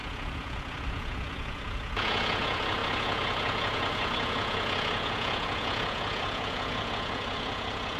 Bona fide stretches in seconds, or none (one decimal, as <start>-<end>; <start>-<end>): none